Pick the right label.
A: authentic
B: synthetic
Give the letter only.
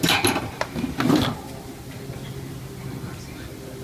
A